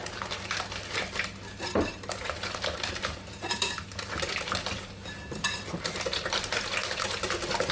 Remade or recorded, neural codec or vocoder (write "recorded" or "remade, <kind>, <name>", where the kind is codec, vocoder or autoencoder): recorded